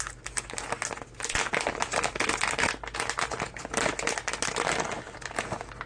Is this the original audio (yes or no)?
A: yes